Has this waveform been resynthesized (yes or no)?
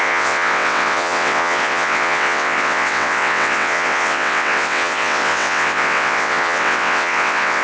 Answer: yes